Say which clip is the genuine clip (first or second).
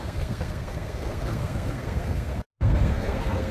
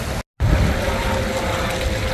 second